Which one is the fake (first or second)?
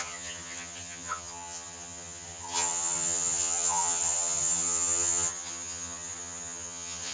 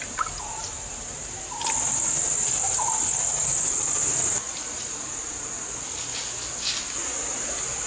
first